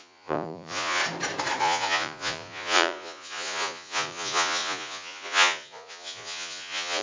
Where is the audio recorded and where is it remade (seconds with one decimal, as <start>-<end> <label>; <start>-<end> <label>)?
0.0-1.0 remade; 1.0-1.6 recorded; 1.6-7.0 remade